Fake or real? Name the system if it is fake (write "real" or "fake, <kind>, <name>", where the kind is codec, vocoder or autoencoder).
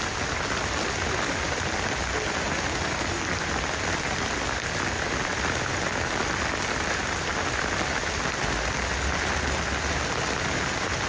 real